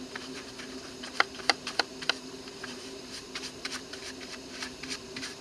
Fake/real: fake